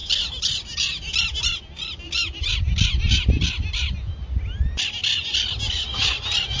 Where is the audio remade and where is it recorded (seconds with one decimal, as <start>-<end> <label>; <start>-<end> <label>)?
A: 0.0-6.6 recorded